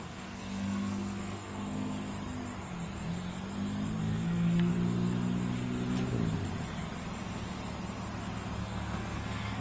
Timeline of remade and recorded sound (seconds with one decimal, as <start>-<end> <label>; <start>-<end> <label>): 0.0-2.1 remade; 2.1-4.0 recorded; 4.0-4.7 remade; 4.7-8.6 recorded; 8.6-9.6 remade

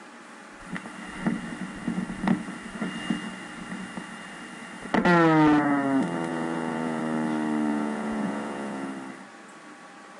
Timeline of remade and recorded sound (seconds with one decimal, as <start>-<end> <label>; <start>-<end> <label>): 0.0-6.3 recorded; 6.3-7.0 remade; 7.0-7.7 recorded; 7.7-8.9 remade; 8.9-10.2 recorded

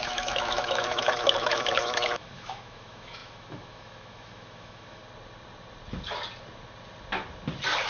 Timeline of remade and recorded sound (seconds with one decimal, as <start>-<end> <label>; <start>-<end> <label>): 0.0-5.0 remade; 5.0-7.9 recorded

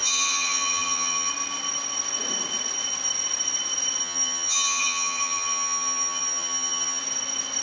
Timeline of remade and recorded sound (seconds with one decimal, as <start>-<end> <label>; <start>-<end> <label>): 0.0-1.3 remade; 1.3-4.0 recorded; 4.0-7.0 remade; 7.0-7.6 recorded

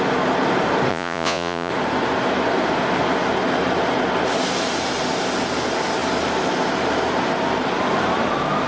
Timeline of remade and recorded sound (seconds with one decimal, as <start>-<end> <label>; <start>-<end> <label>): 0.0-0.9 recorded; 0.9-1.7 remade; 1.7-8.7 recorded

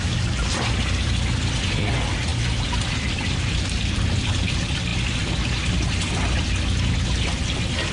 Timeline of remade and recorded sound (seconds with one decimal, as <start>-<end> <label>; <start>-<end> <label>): 0.0-7.9 recorded

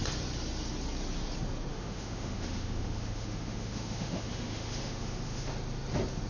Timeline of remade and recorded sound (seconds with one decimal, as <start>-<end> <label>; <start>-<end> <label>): 0.0-1.7 recorded; 1.7-5.5 remade; 5.5-6.3 recorded